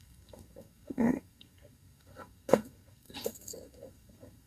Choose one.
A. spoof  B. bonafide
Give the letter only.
A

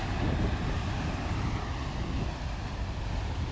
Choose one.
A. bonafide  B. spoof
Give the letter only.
A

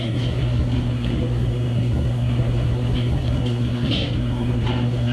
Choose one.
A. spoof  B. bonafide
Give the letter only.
A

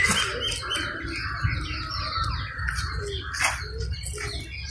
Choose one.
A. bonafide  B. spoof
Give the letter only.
A